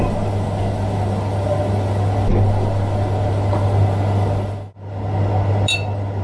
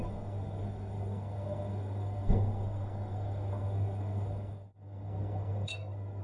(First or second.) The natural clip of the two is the first